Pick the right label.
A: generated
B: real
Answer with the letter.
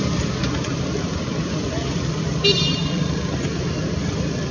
B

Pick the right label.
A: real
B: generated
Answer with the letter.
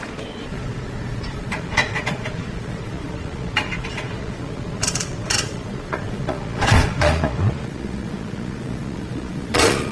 B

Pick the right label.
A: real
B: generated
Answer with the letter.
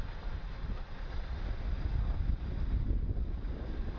A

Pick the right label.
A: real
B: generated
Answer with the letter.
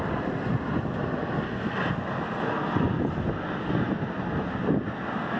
A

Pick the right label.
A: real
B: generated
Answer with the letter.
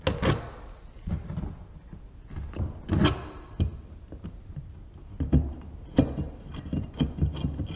A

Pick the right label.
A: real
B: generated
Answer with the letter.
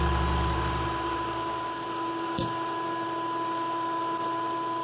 A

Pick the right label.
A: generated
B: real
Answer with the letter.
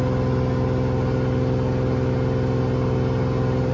B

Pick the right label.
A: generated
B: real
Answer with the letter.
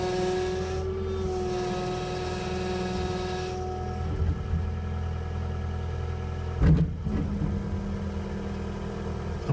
B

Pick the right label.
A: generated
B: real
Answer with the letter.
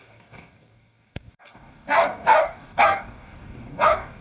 A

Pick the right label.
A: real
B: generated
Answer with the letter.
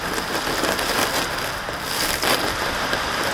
A